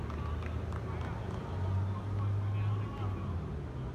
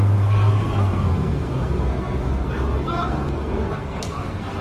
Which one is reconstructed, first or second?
second